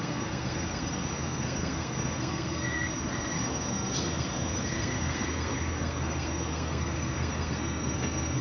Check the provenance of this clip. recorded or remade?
remade